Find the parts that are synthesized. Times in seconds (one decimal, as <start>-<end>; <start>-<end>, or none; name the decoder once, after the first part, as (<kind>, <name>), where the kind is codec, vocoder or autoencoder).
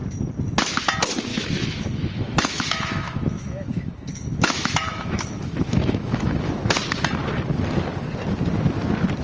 1.3-6.5 (autoencoder, DAC-VAE)